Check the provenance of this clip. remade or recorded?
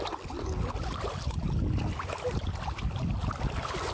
recorded